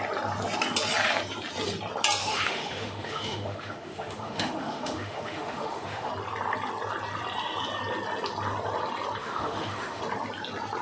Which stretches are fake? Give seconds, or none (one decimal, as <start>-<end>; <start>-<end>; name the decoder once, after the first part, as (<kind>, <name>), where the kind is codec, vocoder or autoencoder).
2.2-6.1 (autoencoder, DAC-VAE); 9.2-10.0